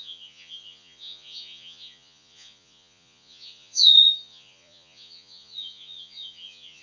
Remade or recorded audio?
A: remade